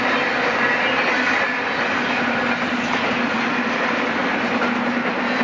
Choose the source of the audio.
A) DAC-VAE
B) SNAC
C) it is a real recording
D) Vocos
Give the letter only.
C